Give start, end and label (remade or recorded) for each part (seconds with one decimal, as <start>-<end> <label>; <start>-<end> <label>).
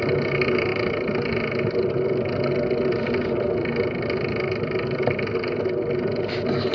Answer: 0.0-6.7 recorded